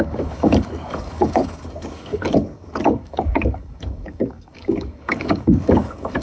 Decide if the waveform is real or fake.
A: fake